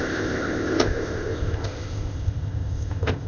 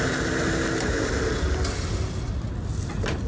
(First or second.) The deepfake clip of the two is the first